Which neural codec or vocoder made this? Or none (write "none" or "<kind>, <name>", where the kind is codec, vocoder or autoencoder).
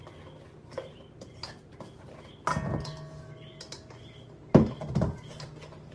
none